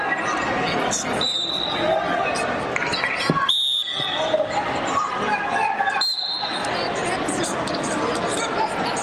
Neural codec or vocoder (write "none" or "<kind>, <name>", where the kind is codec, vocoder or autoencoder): none